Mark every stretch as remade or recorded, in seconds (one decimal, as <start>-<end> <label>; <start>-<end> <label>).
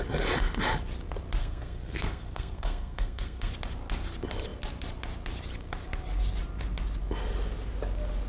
0.0-1.4 recorded; 1.4-3.5 remade; 3.5-8.3 recorded